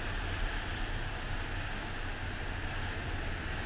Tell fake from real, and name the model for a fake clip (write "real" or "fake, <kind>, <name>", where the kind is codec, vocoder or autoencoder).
real